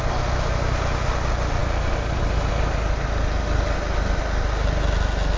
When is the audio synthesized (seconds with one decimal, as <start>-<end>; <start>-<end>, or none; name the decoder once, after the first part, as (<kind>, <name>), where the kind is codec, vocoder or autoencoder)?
none